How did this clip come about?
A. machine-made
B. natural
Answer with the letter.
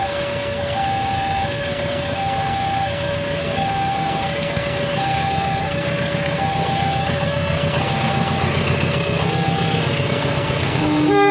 A